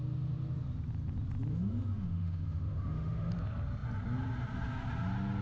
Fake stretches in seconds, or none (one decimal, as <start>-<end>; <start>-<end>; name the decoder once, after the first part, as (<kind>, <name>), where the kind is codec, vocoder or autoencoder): 1.5-3.3 (autoencoder, DAC-VAE)